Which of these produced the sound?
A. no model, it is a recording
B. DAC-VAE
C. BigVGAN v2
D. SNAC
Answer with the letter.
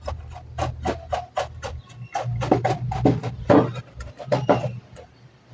C